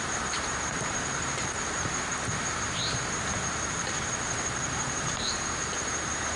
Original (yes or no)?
no